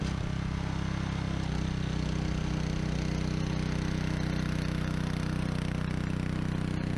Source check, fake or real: real